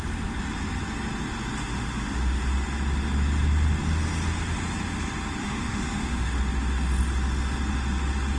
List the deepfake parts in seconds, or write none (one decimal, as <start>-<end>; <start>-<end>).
1.6-2.4; 5.4-6.4